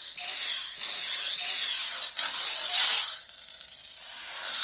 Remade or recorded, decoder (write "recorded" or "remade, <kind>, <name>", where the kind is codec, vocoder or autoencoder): recorded